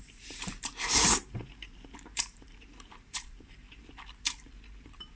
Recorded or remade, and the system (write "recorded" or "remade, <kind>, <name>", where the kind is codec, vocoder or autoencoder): remade, vocoder, BigVGAN v2